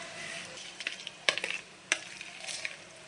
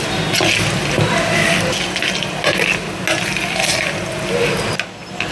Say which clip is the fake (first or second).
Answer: first